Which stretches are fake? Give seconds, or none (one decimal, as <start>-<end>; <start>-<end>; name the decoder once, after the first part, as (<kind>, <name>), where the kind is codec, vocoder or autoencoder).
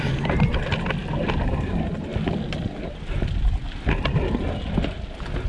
none